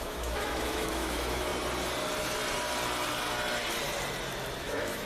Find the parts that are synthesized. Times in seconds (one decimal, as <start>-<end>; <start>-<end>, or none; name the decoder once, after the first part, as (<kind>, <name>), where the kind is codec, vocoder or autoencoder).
0.0-1.5 (autoencoder, DAC-VAE); 4.6-5.1